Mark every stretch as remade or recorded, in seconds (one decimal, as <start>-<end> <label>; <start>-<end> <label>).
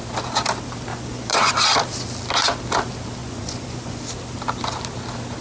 0.0-0.9 recorded; 0.9-1.5 remade; 1.5-3.2 recorded; 3.2-4.0 remade; 4.0-5.4 recorded